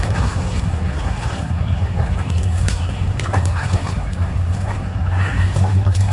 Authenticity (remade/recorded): remade